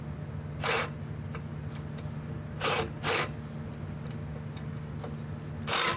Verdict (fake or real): real